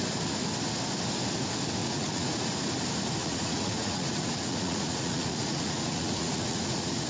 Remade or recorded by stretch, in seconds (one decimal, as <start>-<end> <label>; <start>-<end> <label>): 0.0-1.8 recorded; 1.8-2.4 remade; 2.4-3.2 recorded; 3.2-7.1 remade